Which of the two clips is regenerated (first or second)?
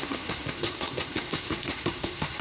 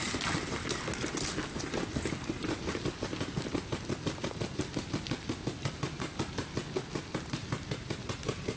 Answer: first